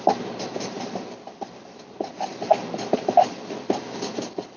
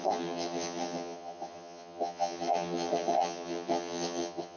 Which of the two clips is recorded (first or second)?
first